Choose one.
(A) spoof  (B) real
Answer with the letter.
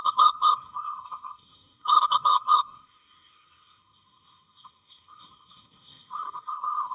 A